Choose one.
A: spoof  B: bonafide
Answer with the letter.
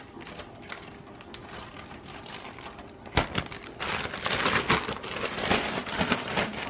B